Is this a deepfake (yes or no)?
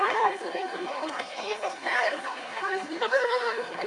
yes